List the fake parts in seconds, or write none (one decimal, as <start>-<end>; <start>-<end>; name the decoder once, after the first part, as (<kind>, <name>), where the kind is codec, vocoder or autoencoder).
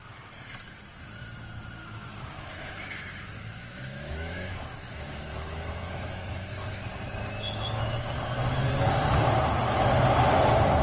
1.8-6.9 (autoencoder, DAC-VAE)